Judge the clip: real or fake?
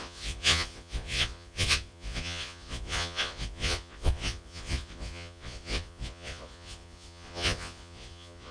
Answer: fake